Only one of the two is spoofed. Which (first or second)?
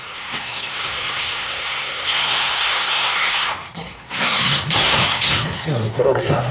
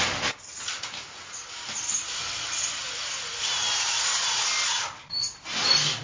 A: first